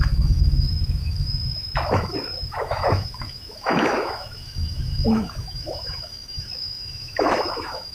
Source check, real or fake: fake